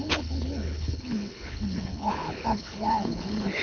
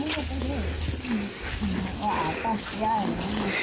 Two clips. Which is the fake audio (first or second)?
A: first